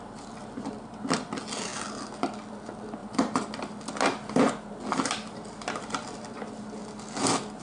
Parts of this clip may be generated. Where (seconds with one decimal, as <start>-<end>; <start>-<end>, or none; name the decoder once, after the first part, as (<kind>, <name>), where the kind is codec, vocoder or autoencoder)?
3.0-3.8 (vocoder, BigVGAN v2)